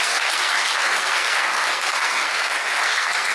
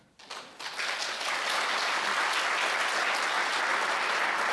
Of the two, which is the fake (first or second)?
first